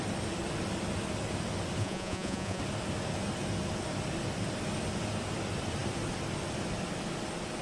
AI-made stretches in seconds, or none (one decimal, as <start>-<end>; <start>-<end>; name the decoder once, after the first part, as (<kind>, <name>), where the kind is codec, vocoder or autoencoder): 1.8-2.6 (vocoder, Vocos)